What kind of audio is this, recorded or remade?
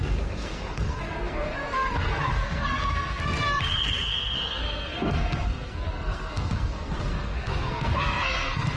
remade